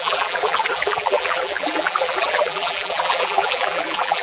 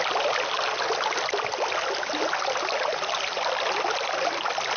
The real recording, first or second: second